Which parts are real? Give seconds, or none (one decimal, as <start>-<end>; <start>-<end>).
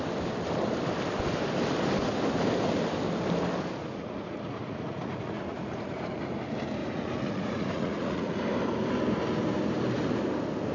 0.0-3.8; 6.2-6.8; 8.4-10.7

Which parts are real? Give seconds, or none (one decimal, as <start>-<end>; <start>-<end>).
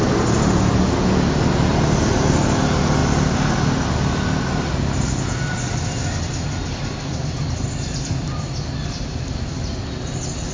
0.0-10.5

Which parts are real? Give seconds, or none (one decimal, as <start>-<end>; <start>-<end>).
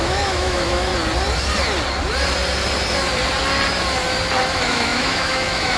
0.9-4.4